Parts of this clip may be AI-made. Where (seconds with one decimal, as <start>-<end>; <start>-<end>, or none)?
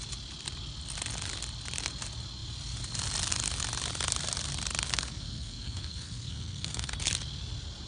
4.9-7.0